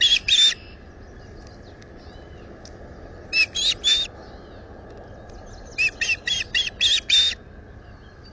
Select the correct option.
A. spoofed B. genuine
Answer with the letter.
B